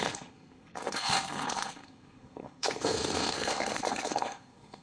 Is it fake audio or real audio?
fake